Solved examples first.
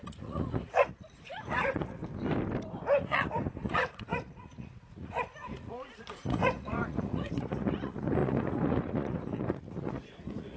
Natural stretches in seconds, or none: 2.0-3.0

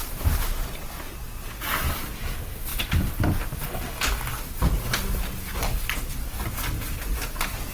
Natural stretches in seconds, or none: 0.9-7.7

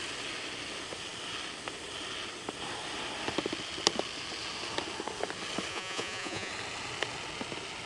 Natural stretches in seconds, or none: 0.0-5.7; 6.5-7.9

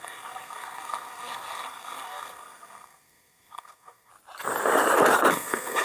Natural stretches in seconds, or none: 4.1-5.3

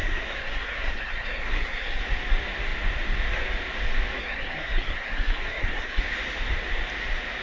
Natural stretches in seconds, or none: 2.0-4.2; 6.0-7.4

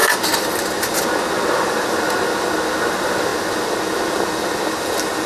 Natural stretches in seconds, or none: 0.0-5.3